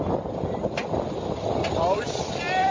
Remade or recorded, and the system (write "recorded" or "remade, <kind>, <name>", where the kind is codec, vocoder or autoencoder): recorded